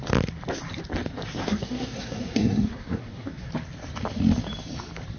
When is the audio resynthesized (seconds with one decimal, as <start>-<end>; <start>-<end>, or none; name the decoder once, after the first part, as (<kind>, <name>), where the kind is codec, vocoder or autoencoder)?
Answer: 1.4-3.5 (codec, SNAC)